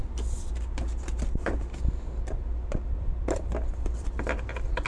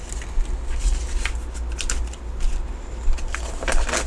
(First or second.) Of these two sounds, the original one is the second